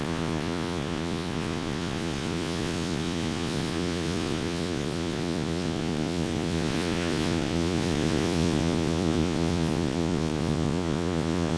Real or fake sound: fake